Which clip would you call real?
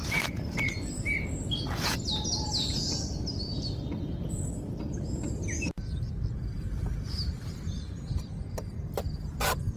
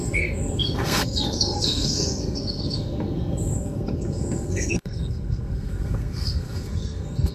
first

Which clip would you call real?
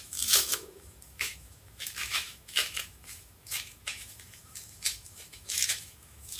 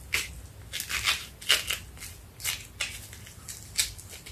second